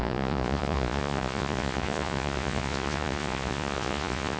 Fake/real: fake